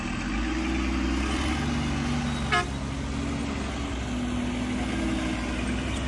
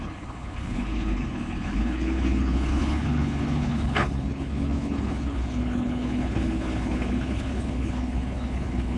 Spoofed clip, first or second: second